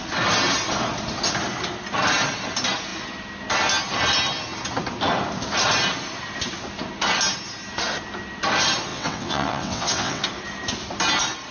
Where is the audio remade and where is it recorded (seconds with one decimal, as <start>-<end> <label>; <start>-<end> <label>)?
0.0-8.9 recorded; 8.9-10.2 remade; 10.2-11.5 recorded